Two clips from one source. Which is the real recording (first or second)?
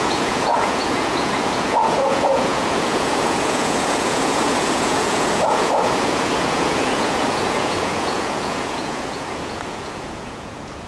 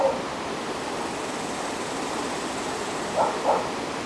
second